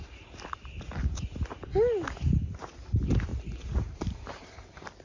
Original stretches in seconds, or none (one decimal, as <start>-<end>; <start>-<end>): 0.0-3.3; 4.5-5.0